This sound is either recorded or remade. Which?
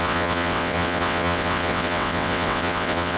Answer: remade